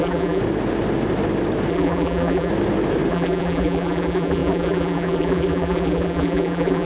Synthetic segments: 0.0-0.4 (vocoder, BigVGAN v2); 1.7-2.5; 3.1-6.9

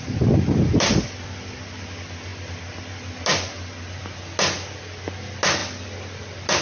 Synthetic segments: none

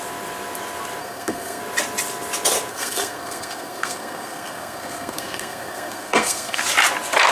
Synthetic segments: 1.0-1.6 (codec, SNAC); 2.7-6.6

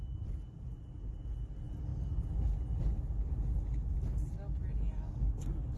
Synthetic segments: none

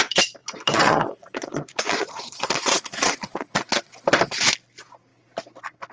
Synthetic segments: 0.4-3.9 (vocoder, Vocos)

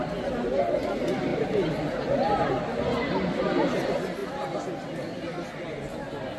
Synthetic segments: none

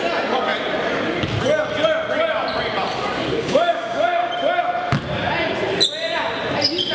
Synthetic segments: 3.4-4.3 (codec, DAC)

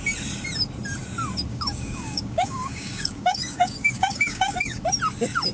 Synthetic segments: 1.5-4.8 (codec, DAC)